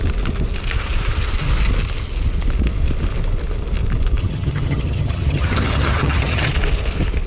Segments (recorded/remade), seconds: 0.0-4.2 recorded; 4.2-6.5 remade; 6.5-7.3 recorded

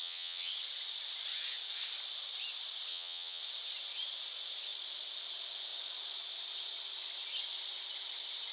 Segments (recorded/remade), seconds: 0.0-0.5 remade; 0.5-2.9 recorded; 2.9-3.4 remade; 3.4-8.5 recorded

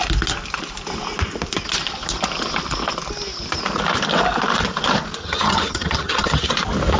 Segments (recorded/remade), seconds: 0.0-5.2 recorded; 5.2-6.5 remade; 6.5-7.0 recorded

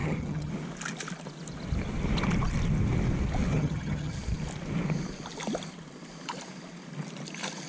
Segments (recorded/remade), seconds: 0.0-0.5 remade; 0.5-3.5 recorded; 3.5-4.2 remade; 4.2-7.7 recorded

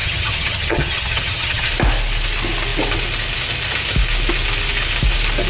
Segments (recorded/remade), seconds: 0.0-1.7 remade; 1.7-5.5 recorded

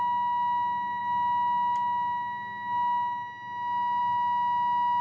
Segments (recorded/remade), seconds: 0.0-5.0 recorded

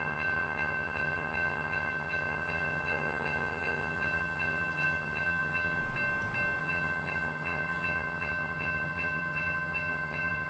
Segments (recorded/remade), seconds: 0.0-5.8 remade; 5.8-6.6 recorded; 6.6-10.5 remade